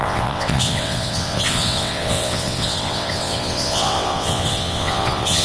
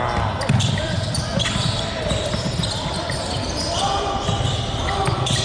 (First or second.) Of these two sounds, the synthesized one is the first